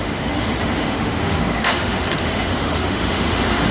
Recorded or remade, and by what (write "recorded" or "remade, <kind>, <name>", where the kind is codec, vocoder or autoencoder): remade, autoencoder, DAC-VAE